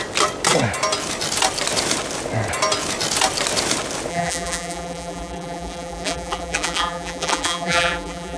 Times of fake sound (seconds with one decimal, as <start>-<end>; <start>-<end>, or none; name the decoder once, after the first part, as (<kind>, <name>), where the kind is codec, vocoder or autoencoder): 4.1-8.4 (vocoder, BigVGAN v2)